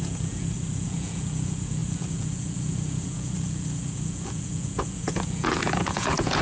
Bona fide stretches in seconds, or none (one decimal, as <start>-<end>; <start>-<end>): none